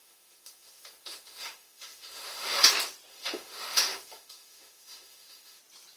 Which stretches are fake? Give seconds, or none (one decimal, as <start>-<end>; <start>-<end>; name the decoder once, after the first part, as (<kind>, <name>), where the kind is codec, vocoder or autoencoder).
0.0-2.7 (autoencoder, DAC-VAE); 3.1-5.6